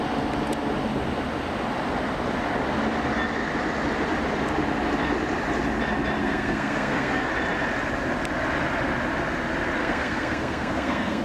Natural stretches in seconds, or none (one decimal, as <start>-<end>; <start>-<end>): 0.0-6.2; 7.3-9.8